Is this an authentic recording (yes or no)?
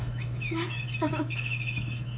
no